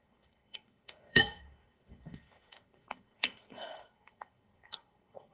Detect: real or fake fake